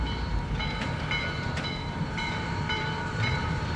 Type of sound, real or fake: fake